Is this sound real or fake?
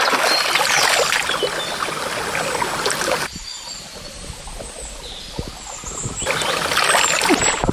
real